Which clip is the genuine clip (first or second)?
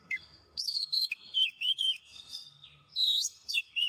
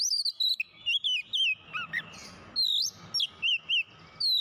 second